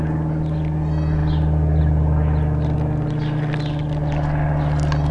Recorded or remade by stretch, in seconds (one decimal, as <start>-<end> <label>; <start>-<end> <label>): 0.0-5.1 recorded